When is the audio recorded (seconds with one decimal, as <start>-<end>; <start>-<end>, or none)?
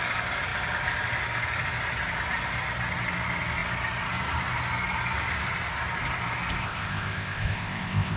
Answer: 0.0-6.6